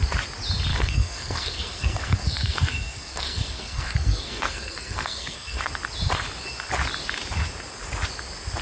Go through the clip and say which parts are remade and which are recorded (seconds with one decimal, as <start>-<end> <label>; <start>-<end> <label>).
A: 0.0-0.7 recorded; 0.7-5.6 remade; 5.6-8.6 recorded